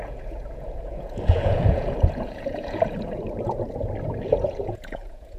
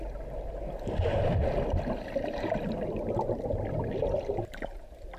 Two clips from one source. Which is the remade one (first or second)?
first